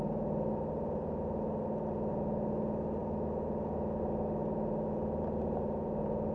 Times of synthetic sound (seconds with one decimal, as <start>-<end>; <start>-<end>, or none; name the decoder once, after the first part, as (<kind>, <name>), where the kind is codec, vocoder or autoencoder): none